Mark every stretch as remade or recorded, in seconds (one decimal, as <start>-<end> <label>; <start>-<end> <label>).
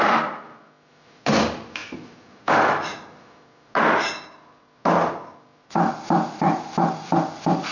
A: 0.0-7.7 recorded